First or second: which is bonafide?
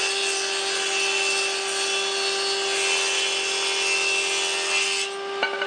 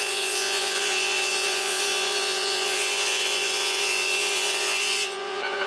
first